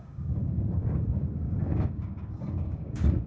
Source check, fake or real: fake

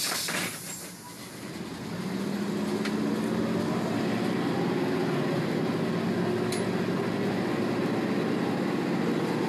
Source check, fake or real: real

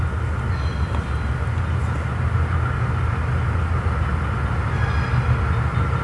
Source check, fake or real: real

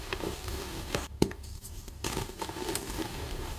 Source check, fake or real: fake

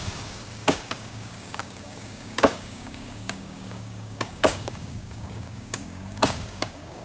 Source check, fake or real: fake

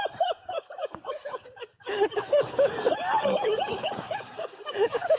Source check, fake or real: fake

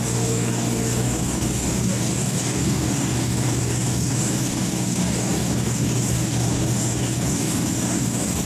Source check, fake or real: fake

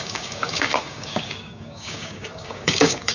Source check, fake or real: fake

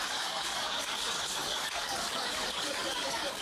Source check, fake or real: fake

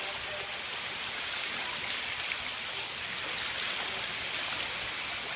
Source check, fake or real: real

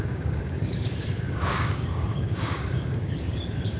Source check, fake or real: fake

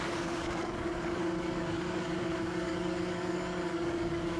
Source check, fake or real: fake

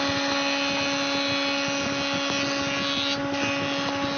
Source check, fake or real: real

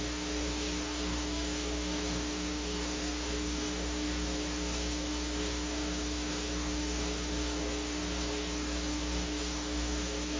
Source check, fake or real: fake